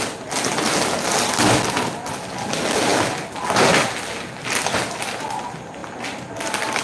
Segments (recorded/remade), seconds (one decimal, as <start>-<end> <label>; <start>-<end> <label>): 0.0-6.8 recorded